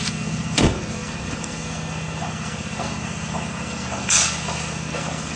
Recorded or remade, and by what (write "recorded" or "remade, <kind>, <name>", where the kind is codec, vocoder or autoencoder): remade, codec, SNAC